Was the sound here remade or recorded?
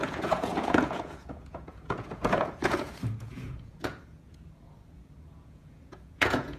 remade